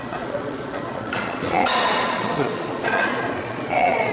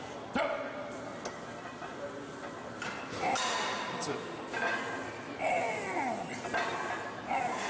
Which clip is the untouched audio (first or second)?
second